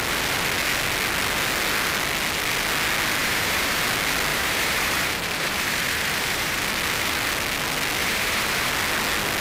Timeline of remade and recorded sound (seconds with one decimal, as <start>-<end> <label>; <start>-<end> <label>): 0.0-3.2 recorded; 3.2-3.8 remade; 3.8-4.3 recorded; 4.3-6.6 remade; 6.6-8.0 recorded; 8.0-8.7 remade; 8.7-9.4 recorded